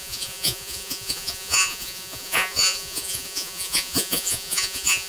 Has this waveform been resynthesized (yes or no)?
yes